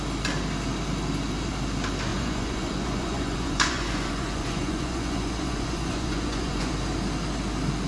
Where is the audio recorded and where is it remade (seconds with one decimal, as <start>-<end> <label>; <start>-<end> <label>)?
0.0-2.1 recorded; 2.1-6.7 remade; 6.7-7.9 recorded